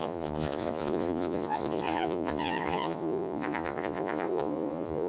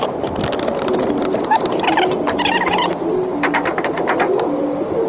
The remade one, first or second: first